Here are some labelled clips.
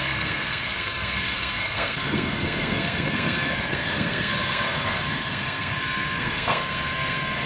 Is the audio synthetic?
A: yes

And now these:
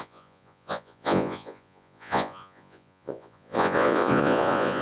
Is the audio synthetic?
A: yes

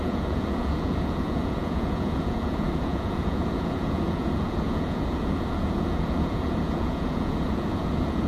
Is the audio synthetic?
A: yes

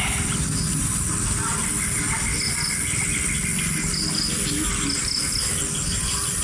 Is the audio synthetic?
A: no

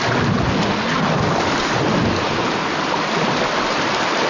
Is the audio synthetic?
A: no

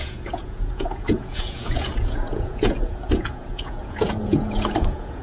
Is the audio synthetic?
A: yes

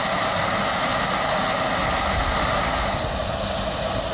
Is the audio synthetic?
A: no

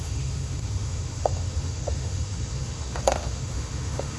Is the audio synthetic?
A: yes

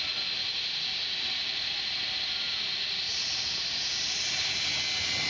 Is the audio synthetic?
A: no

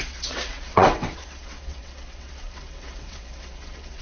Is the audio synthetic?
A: yes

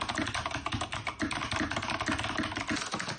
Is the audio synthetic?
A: no